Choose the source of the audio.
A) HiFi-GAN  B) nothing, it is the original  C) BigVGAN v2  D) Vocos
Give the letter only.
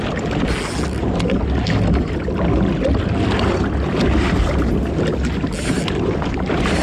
B